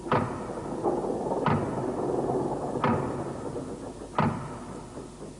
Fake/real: real